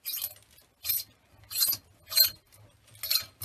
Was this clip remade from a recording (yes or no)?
no